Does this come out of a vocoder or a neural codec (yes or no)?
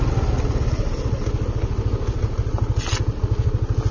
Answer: no